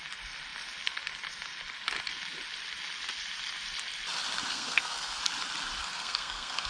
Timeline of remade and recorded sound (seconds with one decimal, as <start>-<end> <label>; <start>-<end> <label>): 0.0-4.5 recorded; 4.5-5.2 remade; 5.2-5.8 recorded; 5.8-6.7 remade